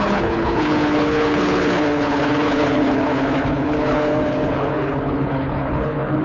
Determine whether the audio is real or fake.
fake